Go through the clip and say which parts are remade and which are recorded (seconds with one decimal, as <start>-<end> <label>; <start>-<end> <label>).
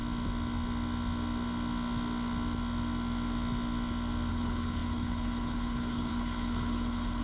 0.0-4.3 recorded; 4.3-7.2 remade